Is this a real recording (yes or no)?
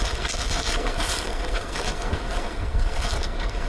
no